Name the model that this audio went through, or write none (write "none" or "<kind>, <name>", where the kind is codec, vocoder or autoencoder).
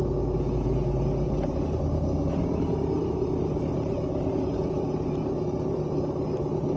none